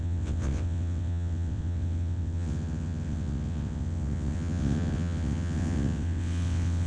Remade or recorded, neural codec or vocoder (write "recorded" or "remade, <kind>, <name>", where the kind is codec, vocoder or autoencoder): remade, vocoder, WaveNeXt